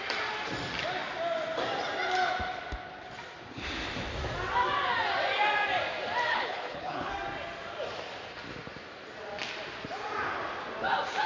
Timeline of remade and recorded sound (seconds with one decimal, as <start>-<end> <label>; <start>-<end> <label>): 0.0-6.3 recorded; 6.3-7.1 remade; 7.1-11.3 recorded